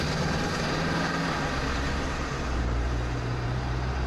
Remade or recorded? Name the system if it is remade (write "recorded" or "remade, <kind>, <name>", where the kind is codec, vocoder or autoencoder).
remade, vocoder, BigVGAN v2